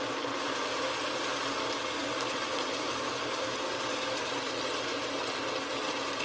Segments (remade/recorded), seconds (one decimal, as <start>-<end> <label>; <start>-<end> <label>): 0.0-6.2 recorded